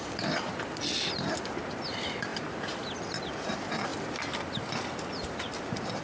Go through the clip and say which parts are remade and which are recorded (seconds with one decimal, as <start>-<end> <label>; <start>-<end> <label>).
0.0-3.9 remade; 3.9-4.8 recorded; 4.8-6.0 remade